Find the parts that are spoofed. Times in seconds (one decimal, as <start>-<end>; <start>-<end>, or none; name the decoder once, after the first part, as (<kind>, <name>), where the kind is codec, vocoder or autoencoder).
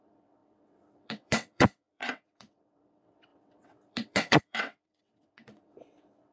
0.0-6.3 (vocoder, WaveNeXt)